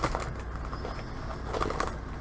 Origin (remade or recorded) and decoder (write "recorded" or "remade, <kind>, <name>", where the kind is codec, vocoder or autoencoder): recorded